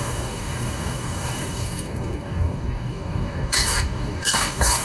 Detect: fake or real fake